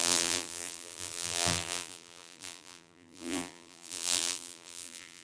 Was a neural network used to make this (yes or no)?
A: yes